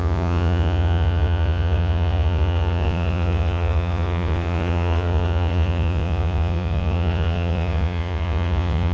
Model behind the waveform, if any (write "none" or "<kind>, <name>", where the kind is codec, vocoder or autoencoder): vocoder, Vocos